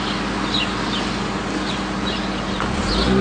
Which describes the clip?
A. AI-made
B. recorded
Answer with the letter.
B